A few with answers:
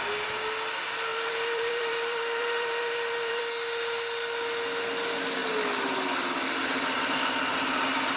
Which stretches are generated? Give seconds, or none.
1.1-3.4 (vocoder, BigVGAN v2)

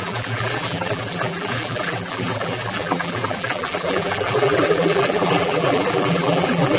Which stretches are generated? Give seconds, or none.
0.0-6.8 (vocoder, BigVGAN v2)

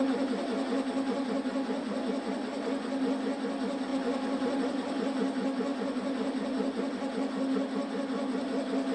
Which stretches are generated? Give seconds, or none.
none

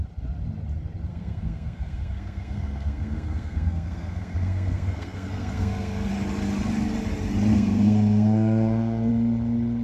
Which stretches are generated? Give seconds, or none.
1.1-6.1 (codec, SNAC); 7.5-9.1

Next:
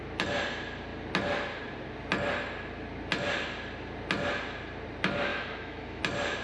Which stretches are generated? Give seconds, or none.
5.3-6.0 (autoencoder, DAC-VAE)